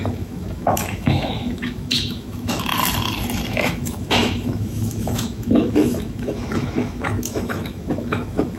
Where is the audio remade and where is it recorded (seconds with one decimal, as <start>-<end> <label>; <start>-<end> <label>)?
0.0-2.7 remade; 2.7-3.5 recorded; 3.5-8.6 remade